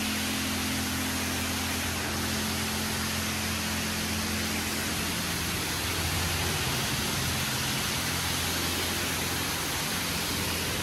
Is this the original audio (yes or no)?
yes